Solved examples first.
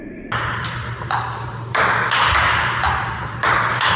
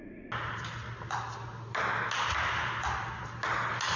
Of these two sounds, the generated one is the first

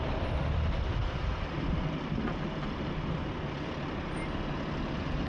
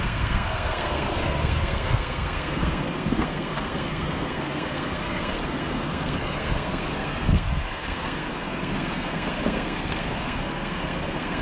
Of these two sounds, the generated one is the second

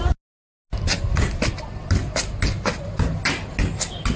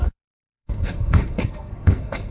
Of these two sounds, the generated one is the second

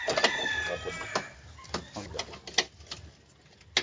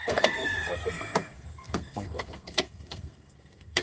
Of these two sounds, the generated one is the second